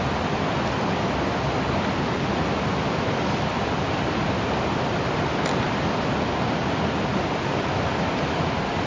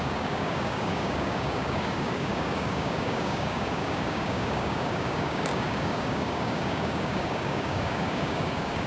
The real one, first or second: first